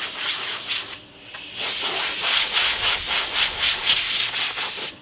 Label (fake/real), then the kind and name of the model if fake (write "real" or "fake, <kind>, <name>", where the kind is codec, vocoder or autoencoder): real